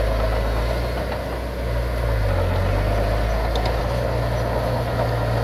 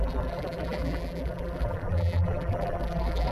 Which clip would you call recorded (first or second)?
first